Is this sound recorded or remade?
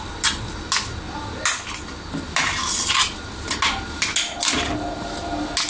recorded